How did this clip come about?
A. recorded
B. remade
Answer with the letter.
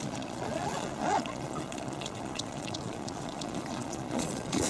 B